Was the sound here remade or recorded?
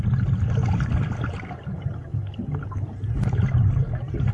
recorded